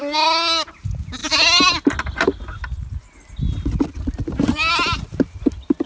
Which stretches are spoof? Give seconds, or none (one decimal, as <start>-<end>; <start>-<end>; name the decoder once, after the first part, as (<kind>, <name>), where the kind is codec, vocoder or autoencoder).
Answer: none